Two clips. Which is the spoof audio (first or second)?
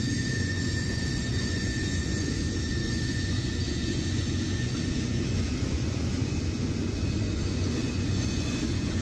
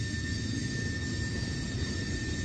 first